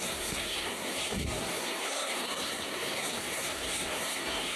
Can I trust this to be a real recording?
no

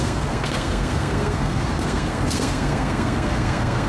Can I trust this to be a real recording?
no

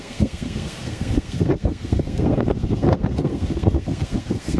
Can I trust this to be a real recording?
no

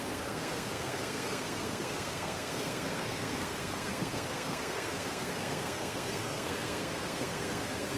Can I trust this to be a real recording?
no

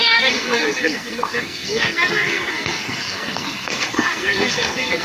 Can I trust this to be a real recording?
no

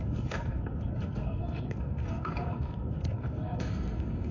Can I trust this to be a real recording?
no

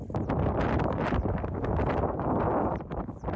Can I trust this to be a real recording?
yes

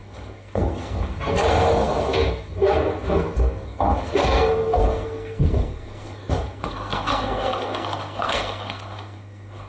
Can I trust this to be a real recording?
no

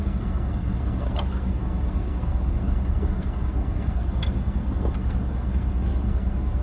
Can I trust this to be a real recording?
no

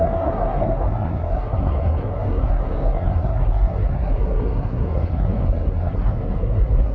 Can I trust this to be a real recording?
no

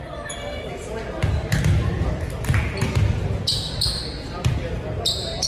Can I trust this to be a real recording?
yes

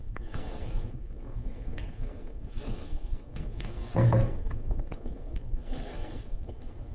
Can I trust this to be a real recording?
no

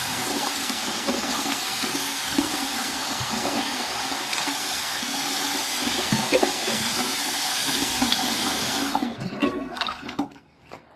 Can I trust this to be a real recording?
no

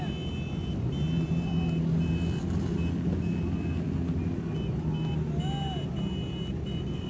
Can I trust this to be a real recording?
yes